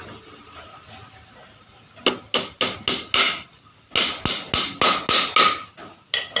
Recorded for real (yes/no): yes